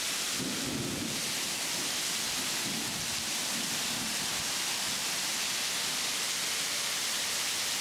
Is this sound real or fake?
real